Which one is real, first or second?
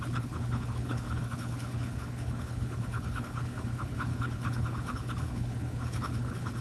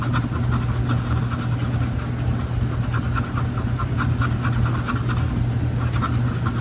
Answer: second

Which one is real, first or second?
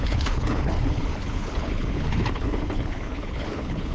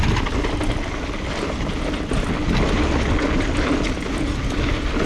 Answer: second